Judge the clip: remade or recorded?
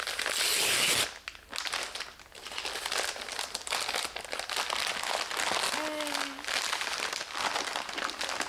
recorded